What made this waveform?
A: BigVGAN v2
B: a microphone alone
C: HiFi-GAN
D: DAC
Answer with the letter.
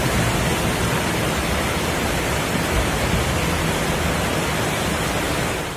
B